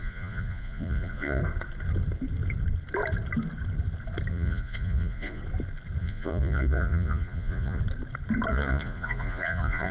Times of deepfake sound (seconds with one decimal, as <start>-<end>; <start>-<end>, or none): 0.0-1.4; 4.3-5.4; 6.0-7.8; 8.5-9.9